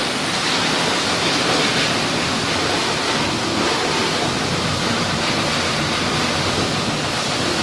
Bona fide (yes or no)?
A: yes